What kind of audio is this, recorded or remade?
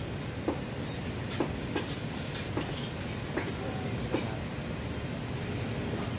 recorded